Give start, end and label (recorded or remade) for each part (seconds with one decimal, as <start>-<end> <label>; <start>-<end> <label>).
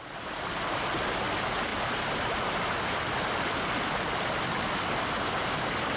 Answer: 0.0-6.0 recorded